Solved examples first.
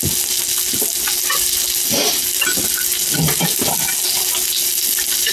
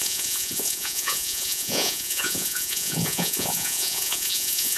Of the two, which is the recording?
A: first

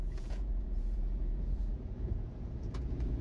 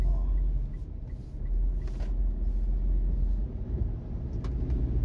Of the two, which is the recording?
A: second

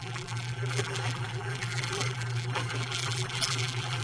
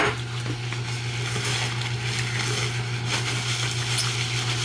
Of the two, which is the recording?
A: second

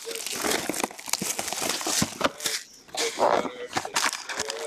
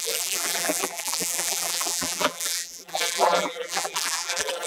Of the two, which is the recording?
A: first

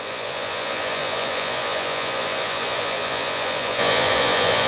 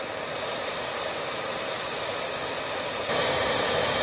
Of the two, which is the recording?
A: second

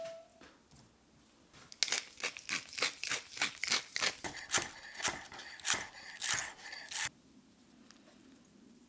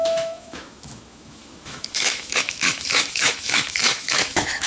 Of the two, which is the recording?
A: first